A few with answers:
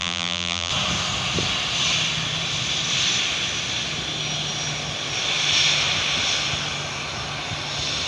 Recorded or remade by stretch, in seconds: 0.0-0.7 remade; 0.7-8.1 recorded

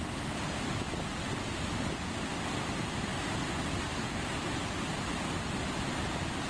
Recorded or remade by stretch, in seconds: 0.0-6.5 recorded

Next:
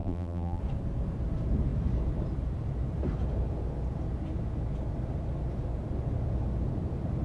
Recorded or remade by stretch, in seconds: 0.0-0.6 remade; 0.6-7.2 recorded

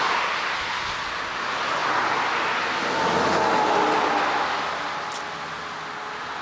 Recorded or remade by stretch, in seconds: 0.0-6.4 recorded

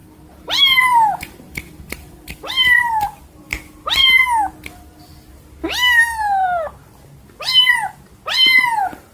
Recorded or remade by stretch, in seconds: 0.0-3.3 remade; 3.3-9.1 recorded